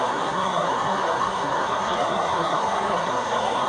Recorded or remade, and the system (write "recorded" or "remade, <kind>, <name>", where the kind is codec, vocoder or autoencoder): remade, codec, SNAC